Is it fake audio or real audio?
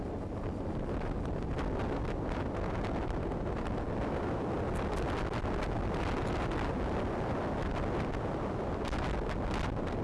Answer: real